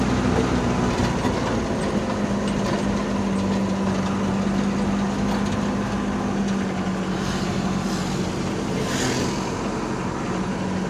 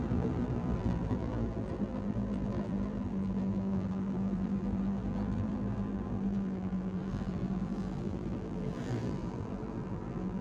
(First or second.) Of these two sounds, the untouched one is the first